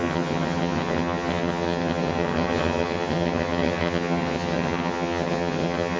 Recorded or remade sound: remade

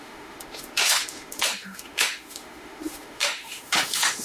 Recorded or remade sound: remade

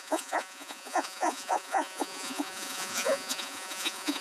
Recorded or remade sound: remade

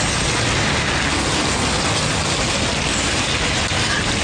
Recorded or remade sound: recorded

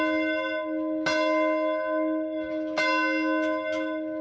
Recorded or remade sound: recorded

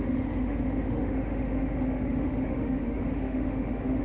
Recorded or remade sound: remade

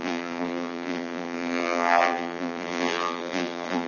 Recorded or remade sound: remade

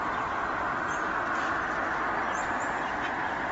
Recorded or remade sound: recorded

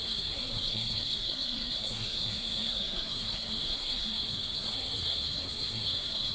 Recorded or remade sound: remade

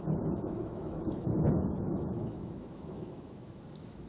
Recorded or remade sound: remade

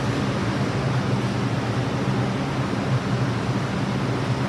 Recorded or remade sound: recorded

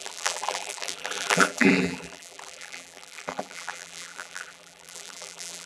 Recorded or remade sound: remade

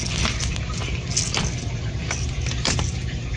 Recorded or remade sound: recorded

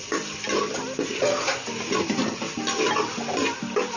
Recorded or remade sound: recorded